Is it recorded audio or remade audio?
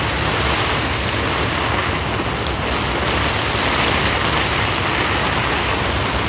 recorded